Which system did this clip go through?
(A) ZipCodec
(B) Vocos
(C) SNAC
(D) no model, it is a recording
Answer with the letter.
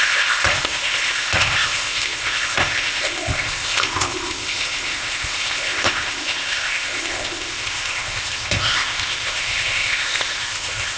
A